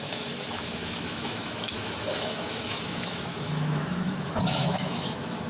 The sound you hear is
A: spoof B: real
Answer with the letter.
A